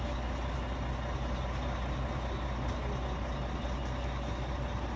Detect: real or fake real